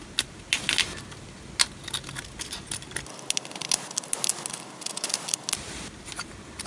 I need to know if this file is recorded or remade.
recorded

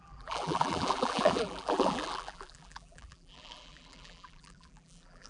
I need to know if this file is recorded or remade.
remade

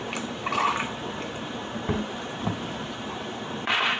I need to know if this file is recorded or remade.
remade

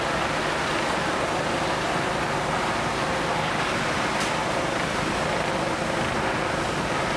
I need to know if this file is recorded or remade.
recorded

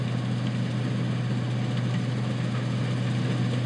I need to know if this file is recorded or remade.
recorded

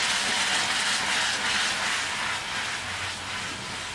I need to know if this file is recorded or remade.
recorded